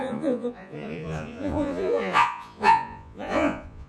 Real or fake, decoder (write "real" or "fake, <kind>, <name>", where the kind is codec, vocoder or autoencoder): fake, vocoder, Vocos